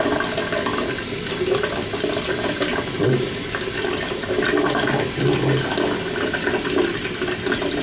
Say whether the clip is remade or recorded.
recorded